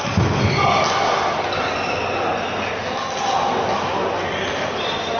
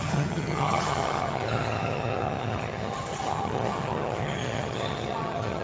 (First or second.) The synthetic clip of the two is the second